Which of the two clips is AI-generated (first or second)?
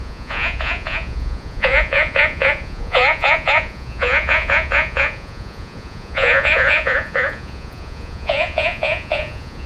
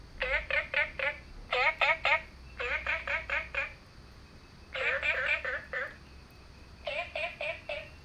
first